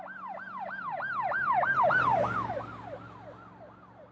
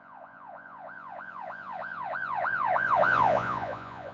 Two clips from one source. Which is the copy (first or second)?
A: second